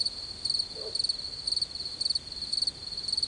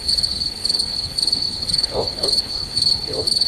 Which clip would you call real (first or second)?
first